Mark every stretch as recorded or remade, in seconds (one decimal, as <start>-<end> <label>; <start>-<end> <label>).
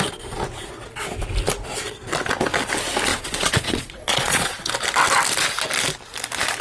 0.0-3.1 recorded; 3.1-4.7 remade; 4.7-6.6 recorded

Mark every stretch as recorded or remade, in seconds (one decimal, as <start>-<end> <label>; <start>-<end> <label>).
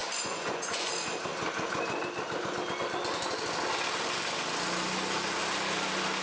0.0-0.9 remade; 0.9-6.2 recorded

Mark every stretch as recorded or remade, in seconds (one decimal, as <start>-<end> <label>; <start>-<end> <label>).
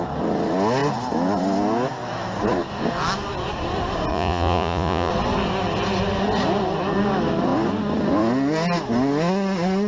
0.0-4.1 recorded; 4.1-5.1 remade; 5.1-9.9 recorded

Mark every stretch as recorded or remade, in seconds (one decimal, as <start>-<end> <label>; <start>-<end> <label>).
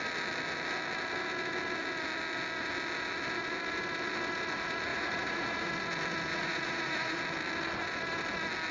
0.0-4.9 recorded; 4.9-5.7 remade; 5.7-6.3 recorded; 6.3-7.2 remade; 7.2-8.7 recorded